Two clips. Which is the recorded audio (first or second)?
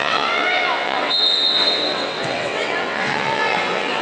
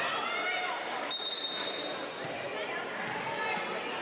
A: second